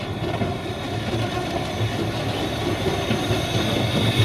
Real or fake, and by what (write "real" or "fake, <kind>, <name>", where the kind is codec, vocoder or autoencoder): real